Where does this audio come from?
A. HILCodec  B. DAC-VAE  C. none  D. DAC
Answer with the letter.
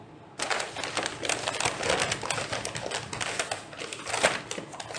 C